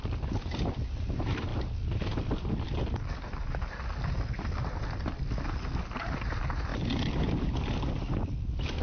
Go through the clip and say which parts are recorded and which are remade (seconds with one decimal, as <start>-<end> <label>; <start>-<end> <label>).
0.0-8.8 recorded